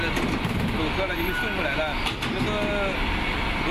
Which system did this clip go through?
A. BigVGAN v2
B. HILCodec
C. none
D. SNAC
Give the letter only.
C